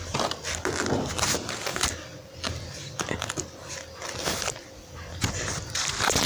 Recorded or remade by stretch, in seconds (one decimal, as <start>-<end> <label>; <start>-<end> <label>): 0.0-6.3 remade